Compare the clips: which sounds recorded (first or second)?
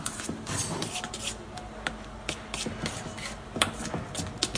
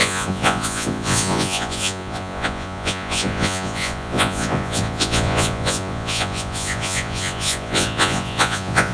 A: first